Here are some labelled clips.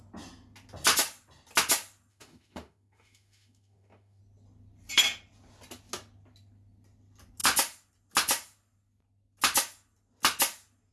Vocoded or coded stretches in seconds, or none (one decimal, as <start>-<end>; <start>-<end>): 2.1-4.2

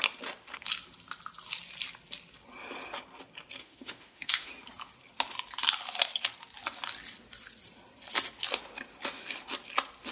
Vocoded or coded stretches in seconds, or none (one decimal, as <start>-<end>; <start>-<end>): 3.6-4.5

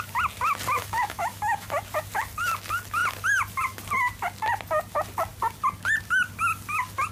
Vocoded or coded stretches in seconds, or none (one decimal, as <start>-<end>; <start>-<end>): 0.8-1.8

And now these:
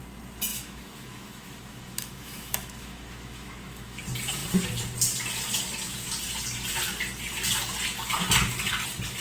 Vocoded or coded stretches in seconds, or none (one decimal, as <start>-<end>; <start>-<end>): 0.5-4.0